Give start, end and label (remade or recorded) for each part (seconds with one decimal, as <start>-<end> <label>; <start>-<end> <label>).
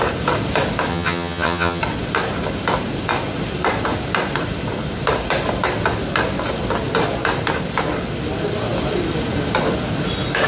0.0-0.9 recorded; 0.9-1.8 remade; 1.8-10.5 recorded